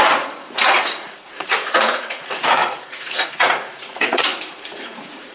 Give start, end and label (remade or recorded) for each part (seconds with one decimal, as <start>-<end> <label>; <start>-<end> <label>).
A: 0.0-5.3 remade